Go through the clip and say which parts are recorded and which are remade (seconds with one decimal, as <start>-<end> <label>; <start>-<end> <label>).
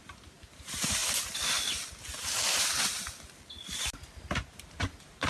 0.0-1.0 remade; 1.0-3.6 recorded; 3.6-5.3 remade